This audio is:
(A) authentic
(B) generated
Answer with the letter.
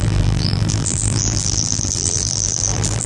B